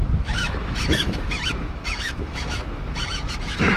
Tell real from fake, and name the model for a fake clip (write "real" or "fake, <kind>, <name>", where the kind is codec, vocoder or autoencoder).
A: fake, autoencoder, DAC-VAE